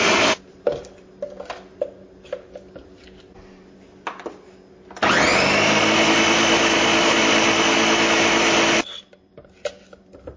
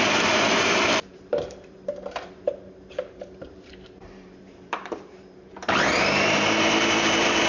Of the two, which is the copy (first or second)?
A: second